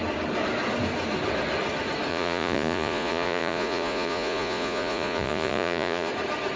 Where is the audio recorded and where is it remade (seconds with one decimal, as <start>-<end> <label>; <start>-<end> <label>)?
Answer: 0.0-2.1 recorded; 2.1-6.1 remade; 6.1-6.6 recorded

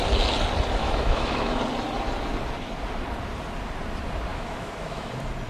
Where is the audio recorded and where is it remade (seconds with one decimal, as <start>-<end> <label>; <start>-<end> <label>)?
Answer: 0.0-0.8 recorded; 0.8-1.6 remade; 1.6-4.3 recorded; 4.3-5.1 remade; 5.1-5.5 recorded

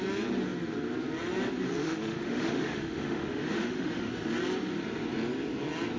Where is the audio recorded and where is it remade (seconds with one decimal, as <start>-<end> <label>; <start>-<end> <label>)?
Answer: 0.0-1.8 recorded; 1.8-4.1 remade; 4.1-6.0 recorded